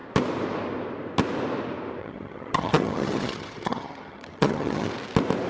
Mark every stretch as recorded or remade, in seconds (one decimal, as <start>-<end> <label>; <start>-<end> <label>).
0.0-2.0 recorded; 2.0-4.9 remade; 4.9-5.5 recorded